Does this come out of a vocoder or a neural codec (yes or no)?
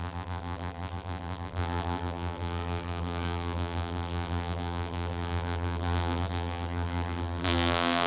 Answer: yes